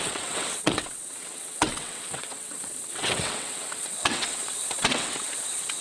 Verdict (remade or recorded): remade